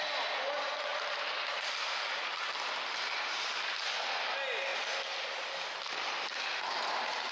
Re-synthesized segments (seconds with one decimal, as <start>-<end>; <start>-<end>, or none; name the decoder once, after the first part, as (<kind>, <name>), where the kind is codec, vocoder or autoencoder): 0.9-1.9 (vocoder, BigVGAN v2)